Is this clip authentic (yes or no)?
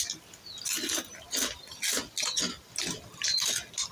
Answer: yes